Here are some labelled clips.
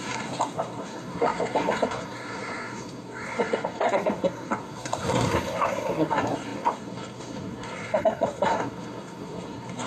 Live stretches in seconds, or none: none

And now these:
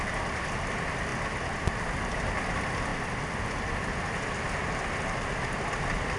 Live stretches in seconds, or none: 0.0-6.2

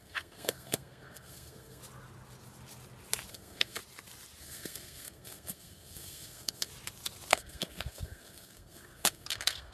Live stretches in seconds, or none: 1.8-3.3; 3.8-4.4; 6.7-7.3

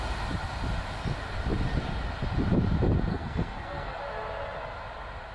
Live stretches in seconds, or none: 0.0-3.1; 4.0-5.3